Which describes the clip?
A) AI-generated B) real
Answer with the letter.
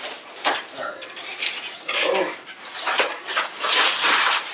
A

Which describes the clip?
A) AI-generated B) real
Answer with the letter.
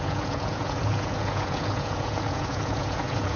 A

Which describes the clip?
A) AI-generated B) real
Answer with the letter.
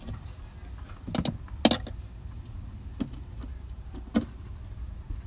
B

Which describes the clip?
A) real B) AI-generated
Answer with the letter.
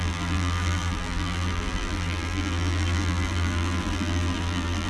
B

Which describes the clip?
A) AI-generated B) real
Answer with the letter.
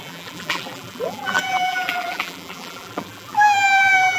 A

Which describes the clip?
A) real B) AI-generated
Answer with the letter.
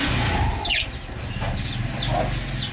A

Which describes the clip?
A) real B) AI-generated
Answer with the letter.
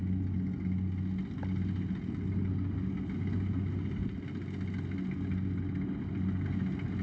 A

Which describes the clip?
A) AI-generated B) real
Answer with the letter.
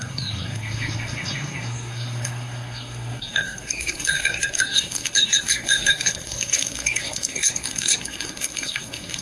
A